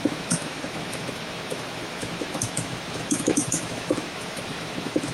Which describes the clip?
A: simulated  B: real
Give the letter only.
A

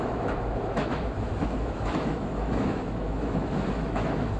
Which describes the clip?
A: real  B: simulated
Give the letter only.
B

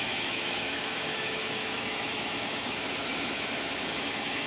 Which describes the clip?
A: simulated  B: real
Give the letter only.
A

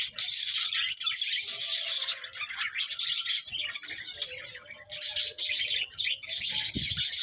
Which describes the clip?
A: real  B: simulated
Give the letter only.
A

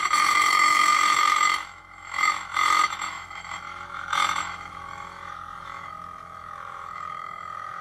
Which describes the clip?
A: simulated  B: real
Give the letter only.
A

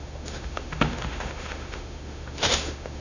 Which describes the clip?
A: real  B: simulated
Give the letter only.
B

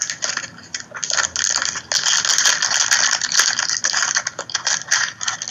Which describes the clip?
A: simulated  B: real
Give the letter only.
B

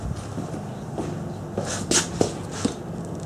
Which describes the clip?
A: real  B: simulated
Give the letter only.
A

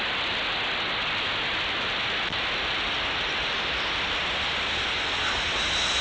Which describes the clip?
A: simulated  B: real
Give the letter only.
B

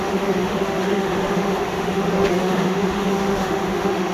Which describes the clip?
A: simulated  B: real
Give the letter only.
A